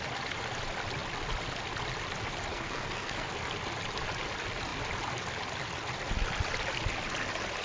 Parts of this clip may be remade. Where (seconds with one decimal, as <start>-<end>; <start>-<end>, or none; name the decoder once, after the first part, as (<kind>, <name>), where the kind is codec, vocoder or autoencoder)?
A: 2.5-3.3 (codec, SNAC)

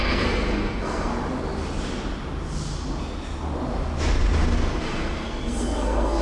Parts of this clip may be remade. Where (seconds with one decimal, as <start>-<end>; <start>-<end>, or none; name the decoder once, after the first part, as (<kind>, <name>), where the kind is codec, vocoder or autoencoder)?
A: 0.0-1.1 (codec, SNAC); 4.8-6.2